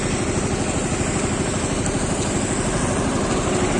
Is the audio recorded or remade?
recorded